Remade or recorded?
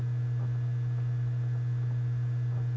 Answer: recorded